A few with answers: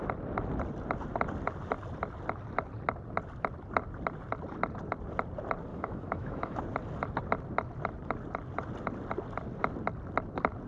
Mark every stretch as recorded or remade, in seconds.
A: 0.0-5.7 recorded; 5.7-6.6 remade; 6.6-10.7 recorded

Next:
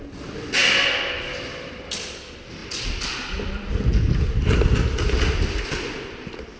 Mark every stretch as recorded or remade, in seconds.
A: 0.0-6.6 recorded

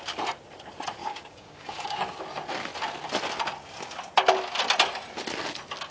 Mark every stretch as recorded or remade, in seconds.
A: 0.0-1.0 recorded; 1.0-2.2 remade; 2.2-5.9 recorded

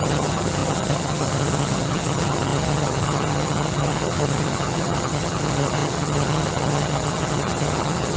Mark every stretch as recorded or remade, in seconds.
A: 0.0-8.2 remade

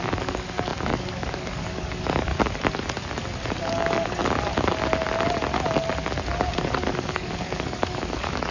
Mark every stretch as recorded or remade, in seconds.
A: 0.0-2.3 remade; 2.3-3.6 recorded; 3.6-4.2 remade; 4.2-6.6 recorded; 6.6-8.5 remade

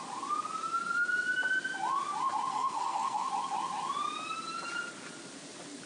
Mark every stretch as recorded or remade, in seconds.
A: 0.0-2.5 recorded; 2.5-3.3 remade; 3.3-5.9 recorded